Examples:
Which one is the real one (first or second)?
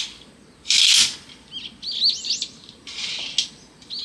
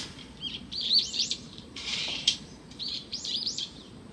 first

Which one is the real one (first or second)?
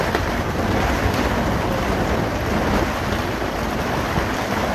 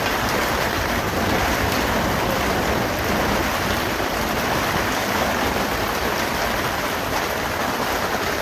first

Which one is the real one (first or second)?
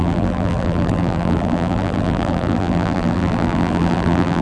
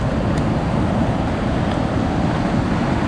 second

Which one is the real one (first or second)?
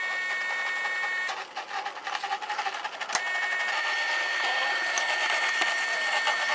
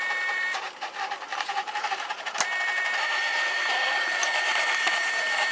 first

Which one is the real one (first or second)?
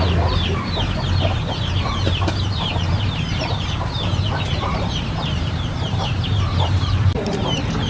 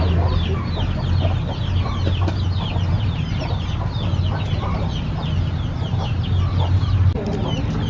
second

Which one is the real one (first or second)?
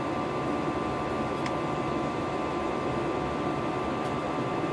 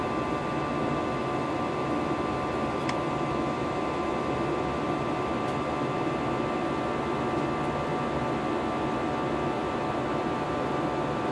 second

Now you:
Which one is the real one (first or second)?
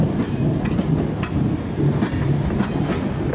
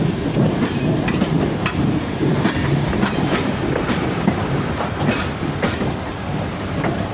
first